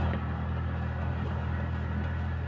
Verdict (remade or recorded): recorded